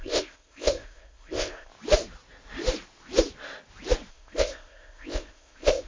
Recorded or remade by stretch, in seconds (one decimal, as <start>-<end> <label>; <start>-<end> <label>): 0.0-1.7 remade; 1.7-4.1 recorded; 4.1-5.9 remade